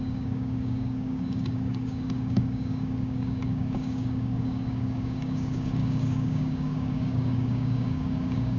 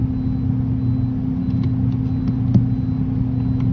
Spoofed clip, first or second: first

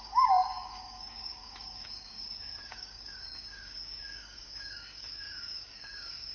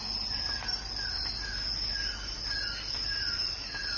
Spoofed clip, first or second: first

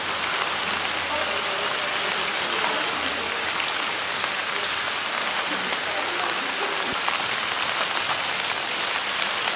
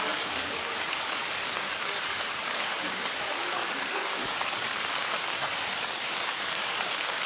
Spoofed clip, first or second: second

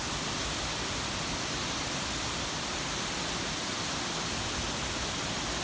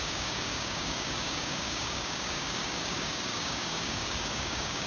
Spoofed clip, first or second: second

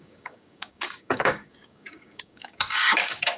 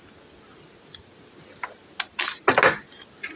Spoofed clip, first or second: first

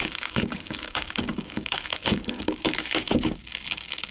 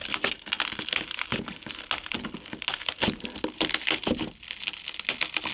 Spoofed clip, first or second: first